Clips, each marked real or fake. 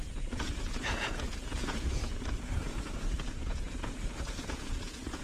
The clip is fake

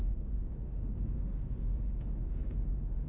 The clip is fake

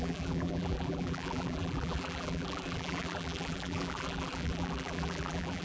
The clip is fake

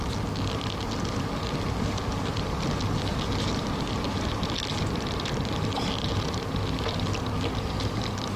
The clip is real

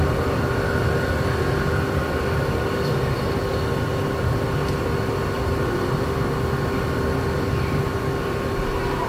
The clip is real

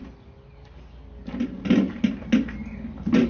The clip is real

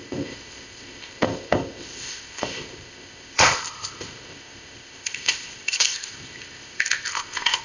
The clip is fake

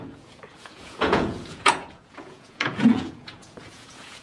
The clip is fake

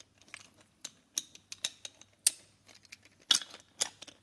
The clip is real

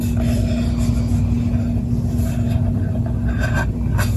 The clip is real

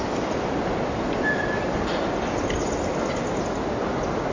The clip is real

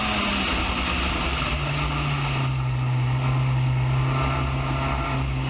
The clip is real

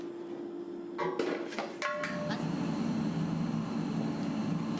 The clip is real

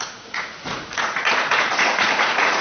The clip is fake